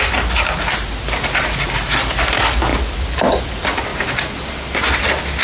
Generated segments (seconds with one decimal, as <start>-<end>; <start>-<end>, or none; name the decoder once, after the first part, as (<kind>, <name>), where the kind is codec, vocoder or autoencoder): none